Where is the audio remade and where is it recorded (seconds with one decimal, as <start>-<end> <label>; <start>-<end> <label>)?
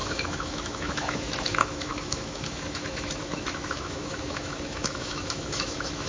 0.0-6.1 remade